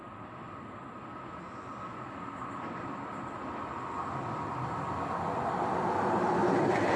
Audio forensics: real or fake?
real